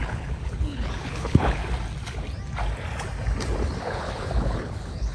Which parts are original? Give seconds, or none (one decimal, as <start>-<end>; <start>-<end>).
1.6-3.8